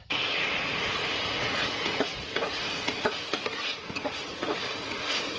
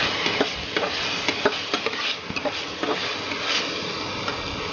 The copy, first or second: first